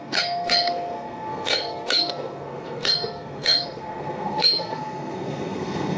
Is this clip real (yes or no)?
no